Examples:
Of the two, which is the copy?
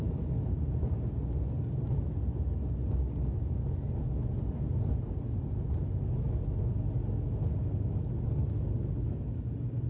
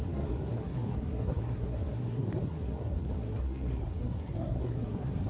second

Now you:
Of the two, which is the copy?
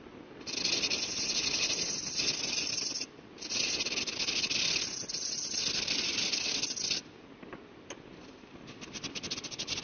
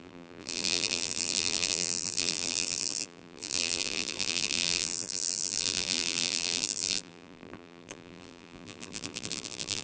second